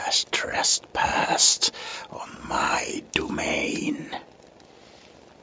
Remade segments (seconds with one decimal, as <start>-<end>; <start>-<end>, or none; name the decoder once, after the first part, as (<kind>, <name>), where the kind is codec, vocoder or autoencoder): 1.9-3.1 (vocoder, BigVGAN v2)